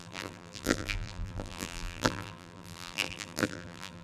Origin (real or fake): fake